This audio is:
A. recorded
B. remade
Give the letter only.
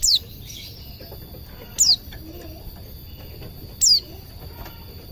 A